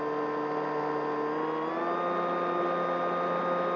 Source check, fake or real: real